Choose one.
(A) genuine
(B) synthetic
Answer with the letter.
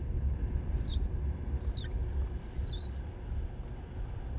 A